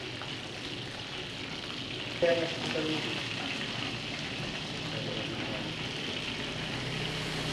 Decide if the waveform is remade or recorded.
recorded